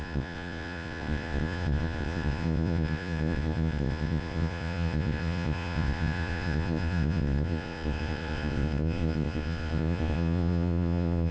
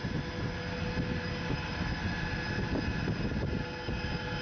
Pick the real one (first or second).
second